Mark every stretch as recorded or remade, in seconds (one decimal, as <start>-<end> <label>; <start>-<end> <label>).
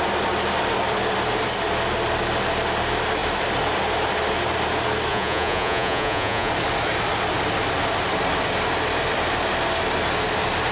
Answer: 0.0-5.1 recorded; 5.1-6.5 remade; 6.5-10.7 recorded